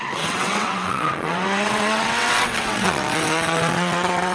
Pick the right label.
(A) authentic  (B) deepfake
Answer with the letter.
B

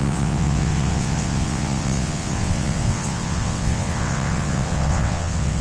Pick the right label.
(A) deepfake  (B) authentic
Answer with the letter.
A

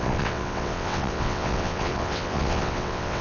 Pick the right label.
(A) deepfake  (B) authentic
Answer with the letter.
A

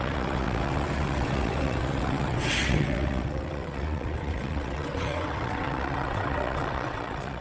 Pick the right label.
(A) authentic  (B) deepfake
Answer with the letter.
B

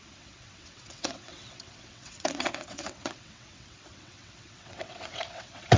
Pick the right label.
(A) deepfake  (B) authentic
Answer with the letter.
A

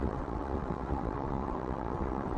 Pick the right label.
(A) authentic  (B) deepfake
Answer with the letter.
B